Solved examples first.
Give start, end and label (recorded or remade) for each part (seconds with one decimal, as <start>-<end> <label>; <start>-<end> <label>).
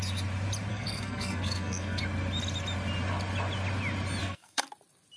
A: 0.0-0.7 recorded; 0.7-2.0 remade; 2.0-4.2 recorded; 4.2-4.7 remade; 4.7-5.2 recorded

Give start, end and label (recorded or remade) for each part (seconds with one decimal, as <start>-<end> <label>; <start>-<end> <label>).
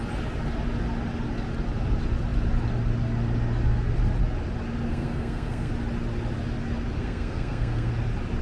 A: 0.0-4.9 recorded; 4.9-5.7 remade; 5.7-7.0 recorded; 7.0-7.9 remade; 7.9-8.4 recorded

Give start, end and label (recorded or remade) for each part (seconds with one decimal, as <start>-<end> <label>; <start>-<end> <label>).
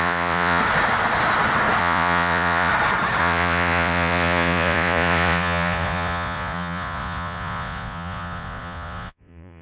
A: 0.0-0.6 remade; 0.6-1.8 recorded; 1.8-2.7 remade; 2.7-3.2 recorded; 3.2-9.6 remade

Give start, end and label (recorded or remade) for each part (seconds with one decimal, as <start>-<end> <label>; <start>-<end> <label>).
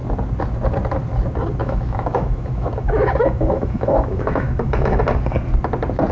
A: 0.0-1.6 recorded; 1.6-5.0 remade; 5.0-6.1 recorded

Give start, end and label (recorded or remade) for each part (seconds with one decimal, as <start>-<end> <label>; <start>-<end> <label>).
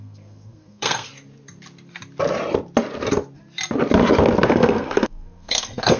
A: 0.0-1.1 remade; 1.1-4.5 recorded; 4.5-6.0 remade